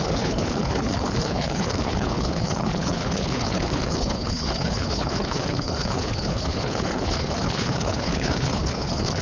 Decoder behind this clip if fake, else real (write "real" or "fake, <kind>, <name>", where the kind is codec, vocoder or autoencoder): fake, codec, HILCodec